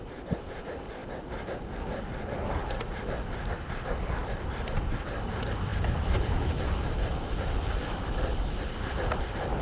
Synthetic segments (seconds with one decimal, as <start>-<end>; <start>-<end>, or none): 0.0-1.0; 3.5-9.6